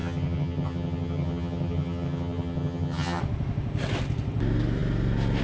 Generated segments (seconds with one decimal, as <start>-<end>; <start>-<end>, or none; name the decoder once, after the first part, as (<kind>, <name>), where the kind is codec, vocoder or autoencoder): 0.0-3.2 (vocoder, HiFi-GAN)